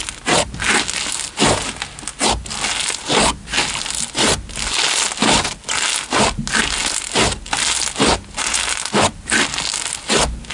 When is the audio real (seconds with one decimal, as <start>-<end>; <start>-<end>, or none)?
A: 0.0-10.5